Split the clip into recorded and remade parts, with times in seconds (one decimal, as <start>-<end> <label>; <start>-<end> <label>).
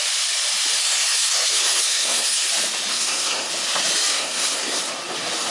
0.0-0.8 recorded; 0.8-2.5 remade; 2.5-2.9 recorded; 2.9-3.5 remade; 3.5-4.1 recorded; 4.1-4.8 remade; 4.8-5.5 recorded